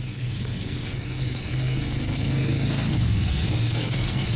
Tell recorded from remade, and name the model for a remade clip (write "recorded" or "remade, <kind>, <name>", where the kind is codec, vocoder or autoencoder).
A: remade, codec, SNAC